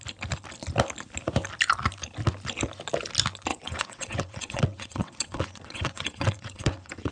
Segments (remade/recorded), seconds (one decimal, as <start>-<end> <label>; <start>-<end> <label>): 0.0-3.5 recorded; 3.5-7.1 remade